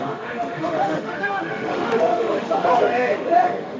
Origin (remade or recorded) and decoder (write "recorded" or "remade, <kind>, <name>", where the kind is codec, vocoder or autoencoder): remade, autoencoder, DAC-VAE